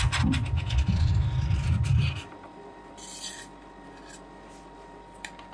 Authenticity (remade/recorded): recorded